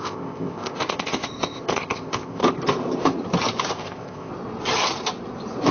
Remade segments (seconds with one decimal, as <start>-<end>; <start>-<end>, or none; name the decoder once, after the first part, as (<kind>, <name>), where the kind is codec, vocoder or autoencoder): 0.0-2.4 (codec, ZipCodec); 3.7-4.3